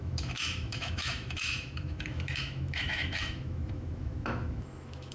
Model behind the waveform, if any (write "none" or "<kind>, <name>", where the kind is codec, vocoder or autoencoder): autoencoder, DAC-VAE